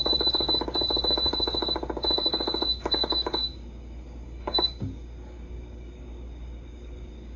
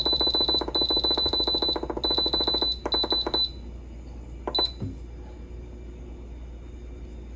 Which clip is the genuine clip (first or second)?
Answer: second